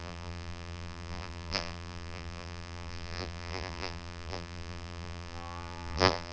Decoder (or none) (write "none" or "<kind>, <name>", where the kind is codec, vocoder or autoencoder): vocoder, BigVGAN v2